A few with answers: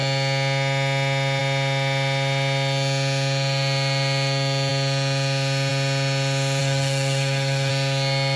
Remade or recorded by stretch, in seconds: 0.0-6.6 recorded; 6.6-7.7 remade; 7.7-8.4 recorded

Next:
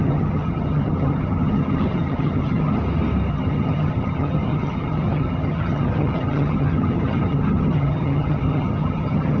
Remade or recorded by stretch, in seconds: 0.0-2.8 remade; 2.8-3.3 recorded; 3.3-9.4 remade

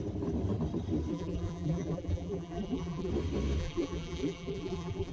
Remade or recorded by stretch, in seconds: 0.0-1.1 recorded; 1.1-3.1 remade; 3.1-3.6 recorded; 3.6-5.1 remade

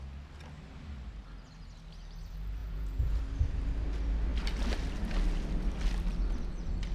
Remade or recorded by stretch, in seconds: 0.0-2.6 recorded; 2.6-3.2 remade; 3.2-6.9 recorded

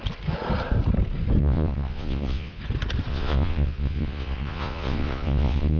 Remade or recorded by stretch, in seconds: 0.0-1.4 recorded; 1.4-2.6 remade; 2.6-3.1 recorded; 3.1-5.8 remade

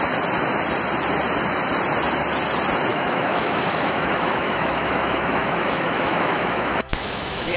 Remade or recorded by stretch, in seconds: 0.0-2.9 recorded; 2.9-7.6 remade

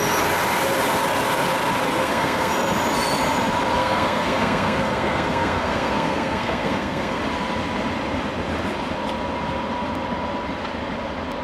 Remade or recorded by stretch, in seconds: 0.0-2.0 recorded; 2.0-2.5 remade; 2.5-3.8 recorded; 3.8-7.2 remade; 7.2-11.4 recorded

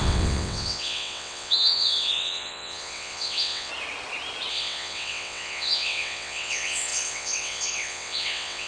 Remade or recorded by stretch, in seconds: 0.0-3.7 remade; 3.7-4.5 recorded; 4.5-8.7 remade